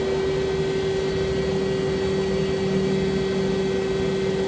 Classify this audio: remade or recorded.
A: recorded